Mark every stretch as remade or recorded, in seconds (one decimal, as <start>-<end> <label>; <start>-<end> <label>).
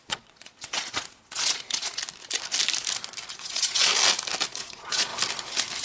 0.0-2.0 remade; 2.0-3.3 recorded; 3.3-3.9 remade; 3.9-4.6 recorded; 4.6-5.1 remade; 5.1-5.8 recorded